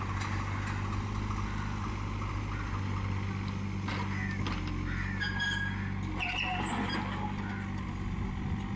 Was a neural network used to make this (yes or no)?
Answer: no